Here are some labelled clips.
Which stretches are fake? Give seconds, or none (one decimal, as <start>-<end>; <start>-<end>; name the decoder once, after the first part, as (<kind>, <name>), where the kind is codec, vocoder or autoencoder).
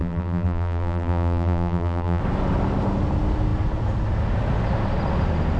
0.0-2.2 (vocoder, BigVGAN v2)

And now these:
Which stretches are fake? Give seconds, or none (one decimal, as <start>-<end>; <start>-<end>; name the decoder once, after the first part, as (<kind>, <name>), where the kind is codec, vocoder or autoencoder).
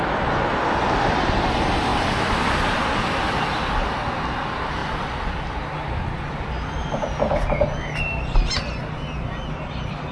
none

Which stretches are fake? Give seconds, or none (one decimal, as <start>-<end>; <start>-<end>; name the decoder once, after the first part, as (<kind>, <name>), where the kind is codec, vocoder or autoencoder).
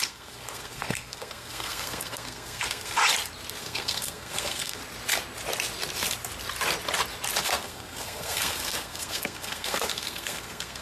0.0-3.0 (codec, SNAC); 3.6-4.8; 7.4-10.8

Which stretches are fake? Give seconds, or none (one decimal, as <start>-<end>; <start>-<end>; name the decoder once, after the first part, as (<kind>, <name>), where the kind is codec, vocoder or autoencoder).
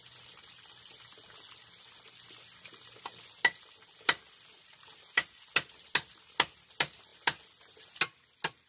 none